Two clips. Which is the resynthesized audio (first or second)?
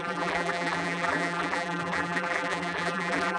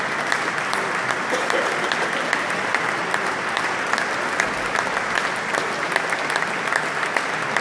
first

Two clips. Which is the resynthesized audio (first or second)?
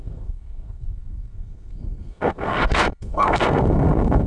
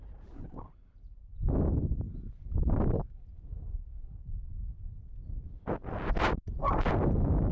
first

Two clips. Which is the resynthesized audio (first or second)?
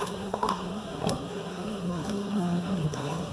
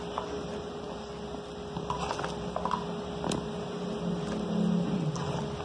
first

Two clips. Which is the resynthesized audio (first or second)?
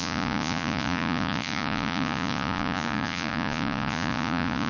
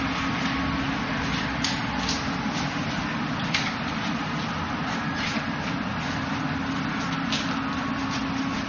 first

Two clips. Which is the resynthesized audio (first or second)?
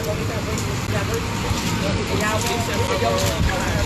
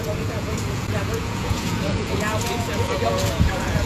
second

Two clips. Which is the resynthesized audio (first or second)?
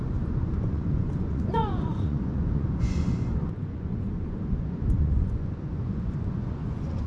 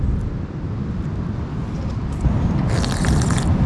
first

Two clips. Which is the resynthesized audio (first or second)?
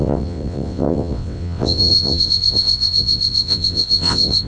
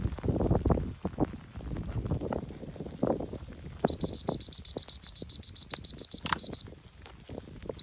first